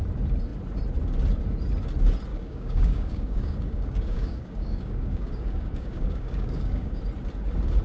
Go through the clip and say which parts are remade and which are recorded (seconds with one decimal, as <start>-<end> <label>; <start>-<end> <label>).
0.0-2.3 recorded; 2.3-7.0 remade; 7.0-7.8 recorded